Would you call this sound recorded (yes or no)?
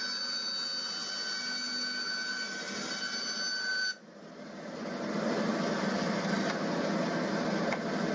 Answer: yes